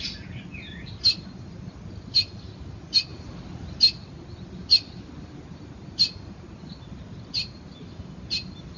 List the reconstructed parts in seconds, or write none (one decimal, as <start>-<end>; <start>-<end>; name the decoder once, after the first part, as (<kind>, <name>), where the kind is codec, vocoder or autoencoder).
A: none